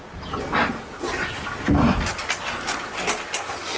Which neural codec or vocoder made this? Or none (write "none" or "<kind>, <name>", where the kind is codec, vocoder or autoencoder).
none